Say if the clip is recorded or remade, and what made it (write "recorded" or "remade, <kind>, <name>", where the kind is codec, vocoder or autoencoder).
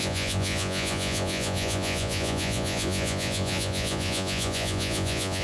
remade, vocoder, Vocos